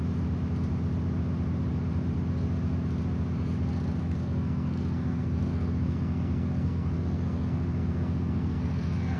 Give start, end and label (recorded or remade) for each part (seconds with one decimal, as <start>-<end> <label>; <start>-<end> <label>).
0.0-4.0 recorded; 4.0-9.2 remade